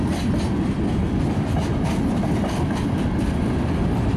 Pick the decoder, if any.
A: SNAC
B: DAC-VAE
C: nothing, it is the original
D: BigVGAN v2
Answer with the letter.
C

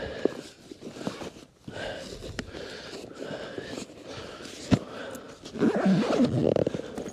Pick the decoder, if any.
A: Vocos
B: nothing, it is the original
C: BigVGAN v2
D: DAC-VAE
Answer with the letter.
B